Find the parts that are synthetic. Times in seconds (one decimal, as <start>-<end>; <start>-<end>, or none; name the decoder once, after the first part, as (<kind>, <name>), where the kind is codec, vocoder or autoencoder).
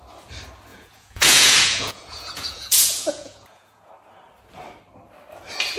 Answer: 0.7-3.9 (vocoder, Vocos)